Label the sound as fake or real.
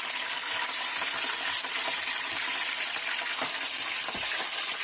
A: fake